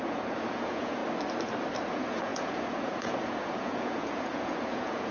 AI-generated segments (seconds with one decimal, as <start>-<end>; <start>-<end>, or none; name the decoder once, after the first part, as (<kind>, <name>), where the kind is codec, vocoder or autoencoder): 0.0-1.0 (vocoder, Vocos); 1.9-5.1